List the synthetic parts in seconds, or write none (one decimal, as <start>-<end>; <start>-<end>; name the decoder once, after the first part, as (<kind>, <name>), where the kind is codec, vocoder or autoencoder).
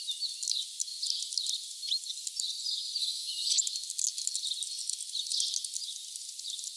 3.0-3.6 (autoencoder, DAC-VAE)